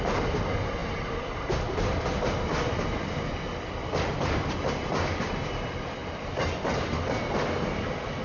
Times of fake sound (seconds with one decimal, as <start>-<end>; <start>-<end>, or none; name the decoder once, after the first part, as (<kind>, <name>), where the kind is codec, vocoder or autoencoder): 0.8-3.3 (vocoder, BigVGAN v2); 6.0-7.2

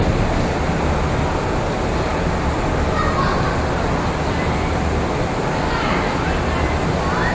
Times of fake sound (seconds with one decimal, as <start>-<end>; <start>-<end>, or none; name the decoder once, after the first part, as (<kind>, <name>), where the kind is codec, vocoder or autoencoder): none

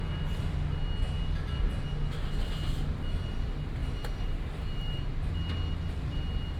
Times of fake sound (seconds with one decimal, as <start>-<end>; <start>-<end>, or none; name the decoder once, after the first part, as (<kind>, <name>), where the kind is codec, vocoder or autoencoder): 3.8-5.3 (vocoder, BigVGAN v2)